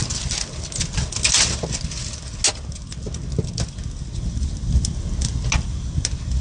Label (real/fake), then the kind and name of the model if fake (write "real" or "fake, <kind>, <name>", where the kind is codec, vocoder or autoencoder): real